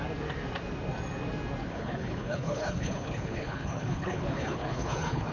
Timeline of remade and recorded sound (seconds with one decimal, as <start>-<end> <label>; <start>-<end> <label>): 0.0-1.7 recorded; 1.7-5.3 remade